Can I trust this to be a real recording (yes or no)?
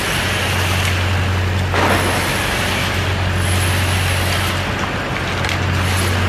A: yes